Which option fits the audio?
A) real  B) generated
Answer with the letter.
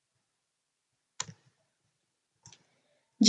A